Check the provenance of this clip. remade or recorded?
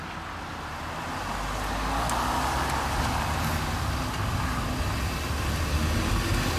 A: recorded